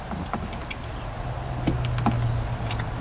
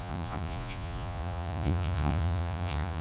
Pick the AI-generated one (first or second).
second